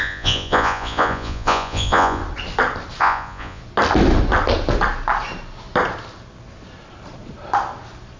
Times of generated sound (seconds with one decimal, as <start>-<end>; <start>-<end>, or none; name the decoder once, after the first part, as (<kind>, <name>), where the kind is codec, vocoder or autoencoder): 0.0-2.2 (vocoder, Vocos); 3.0-3.6